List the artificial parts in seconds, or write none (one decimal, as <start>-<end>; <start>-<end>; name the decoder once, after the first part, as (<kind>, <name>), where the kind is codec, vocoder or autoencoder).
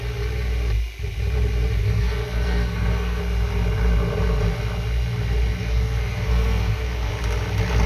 1.8-3.2 (codec, SNAC); 5.6-7.1